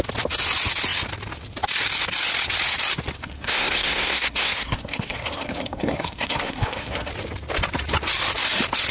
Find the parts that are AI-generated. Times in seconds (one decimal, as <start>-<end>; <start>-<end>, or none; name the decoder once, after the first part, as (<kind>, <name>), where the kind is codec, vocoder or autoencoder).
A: 3.2-7.1 (codec, SNAC)

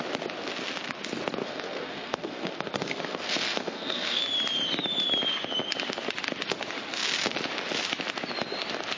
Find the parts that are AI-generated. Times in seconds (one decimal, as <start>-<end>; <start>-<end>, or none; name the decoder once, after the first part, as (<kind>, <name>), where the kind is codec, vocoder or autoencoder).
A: 1.4-4.2 (codec, SNAC)

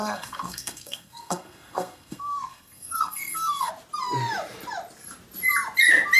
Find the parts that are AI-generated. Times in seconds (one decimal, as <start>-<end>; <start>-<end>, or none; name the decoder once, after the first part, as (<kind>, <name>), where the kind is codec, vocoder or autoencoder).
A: 0.0-3.7 (codec, SNAC)

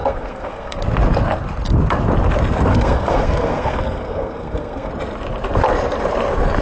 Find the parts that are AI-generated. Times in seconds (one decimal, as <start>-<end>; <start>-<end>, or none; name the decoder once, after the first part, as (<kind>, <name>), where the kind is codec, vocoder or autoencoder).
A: 0.0-0.8 (codec, SNAC); 2.7-4.9

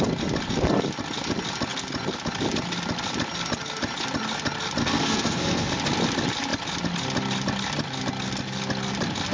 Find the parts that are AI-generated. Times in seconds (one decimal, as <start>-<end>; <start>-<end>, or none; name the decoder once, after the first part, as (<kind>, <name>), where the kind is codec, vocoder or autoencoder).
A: 4.8-5.7 (codec, SNAC)

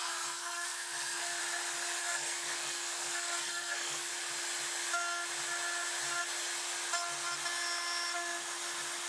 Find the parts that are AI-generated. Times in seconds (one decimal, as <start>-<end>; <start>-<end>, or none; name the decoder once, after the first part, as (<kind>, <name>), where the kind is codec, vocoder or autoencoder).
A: 0.0-1.4 (codec, SNAC); 2.0-4.1